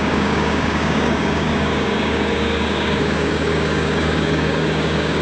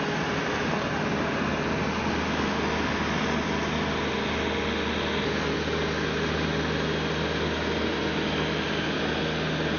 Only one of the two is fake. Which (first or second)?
first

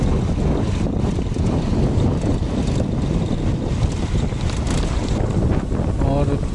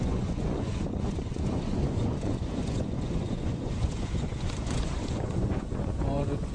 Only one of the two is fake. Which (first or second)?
second